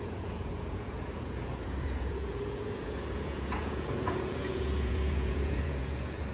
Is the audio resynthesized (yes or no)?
yes